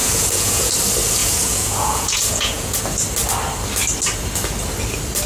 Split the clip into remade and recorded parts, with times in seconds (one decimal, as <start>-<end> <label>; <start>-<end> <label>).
0.0-0.7 remade; 0.7-1.2 recorded; 1.2-2.8 remade; 2.8-5.3 recorded